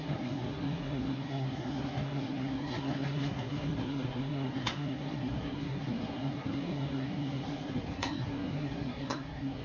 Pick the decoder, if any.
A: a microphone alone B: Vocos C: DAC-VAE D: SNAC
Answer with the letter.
D